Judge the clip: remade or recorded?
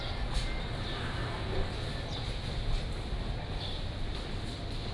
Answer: recorded